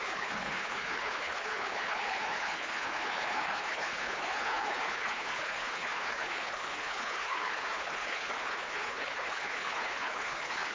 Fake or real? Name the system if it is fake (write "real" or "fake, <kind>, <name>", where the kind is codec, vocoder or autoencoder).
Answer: fake, codec, HILCodec